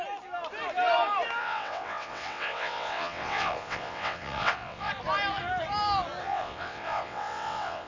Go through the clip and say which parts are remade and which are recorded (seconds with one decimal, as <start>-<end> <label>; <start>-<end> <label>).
0.0-1.4 recorded; 1.4-4.9 remade; 4.9-6.2 recorded; 6.2-7.9 remade